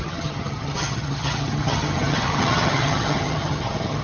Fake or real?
fake